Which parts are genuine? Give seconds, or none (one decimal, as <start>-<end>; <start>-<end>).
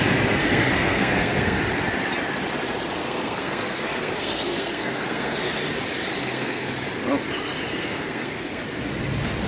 0.0-0.4; 1.6-3.0; 5.5-6.2; 6.7-7.7; 8.6-9.5